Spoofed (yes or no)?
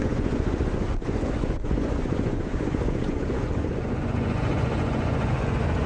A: yes